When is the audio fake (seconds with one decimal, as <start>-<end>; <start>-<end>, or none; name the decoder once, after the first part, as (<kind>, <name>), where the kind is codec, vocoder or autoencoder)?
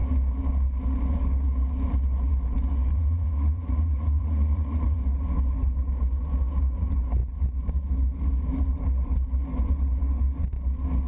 2.9-5.0 (vocoder, Vocos)